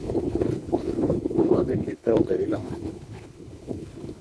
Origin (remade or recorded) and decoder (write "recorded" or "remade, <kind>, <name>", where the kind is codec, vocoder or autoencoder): remade, codec, HILCodec